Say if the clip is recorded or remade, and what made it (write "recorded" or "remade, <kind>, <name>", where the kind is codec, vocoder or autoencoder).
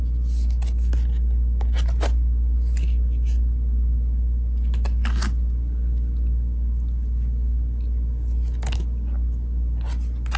recorded